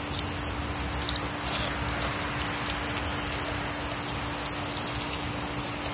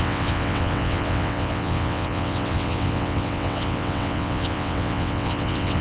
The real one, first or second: first